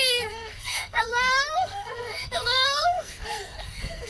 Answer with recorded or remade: remade